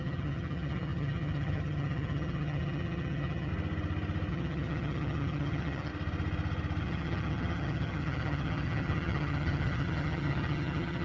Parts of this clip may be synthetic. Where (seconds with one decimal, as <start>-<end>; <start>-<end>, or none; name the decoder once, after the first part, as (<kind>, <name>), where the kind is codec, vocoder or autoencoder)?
0.0-3.5 (vocoder, HiFi-GAN); 4.3-5.9; 6.8-11.0